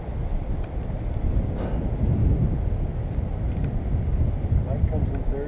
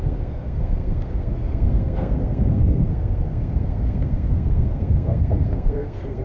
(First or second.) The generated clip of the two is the second